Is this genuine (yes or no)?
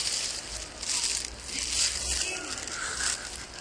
yes